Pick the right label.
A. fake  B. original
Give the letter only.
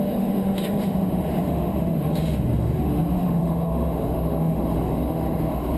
A